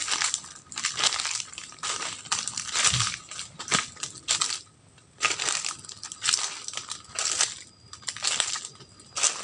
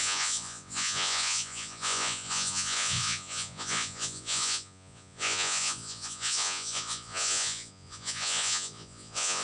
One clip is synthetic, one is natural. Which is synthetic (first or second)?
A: second